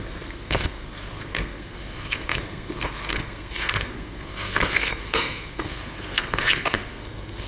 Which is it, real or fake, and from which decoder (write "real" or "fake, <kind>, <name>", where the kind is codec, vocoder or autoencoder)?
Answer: fake, codec, SNAC